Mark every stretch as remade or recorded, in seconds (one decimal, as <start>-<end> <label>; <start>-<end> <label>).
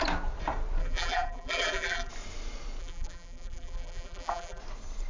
0.0-0.8 recorded; 0.8-2.1 remade; 2.1-2.8 recorded; 2.8-4.6 remade; 4.6-5.1 recorded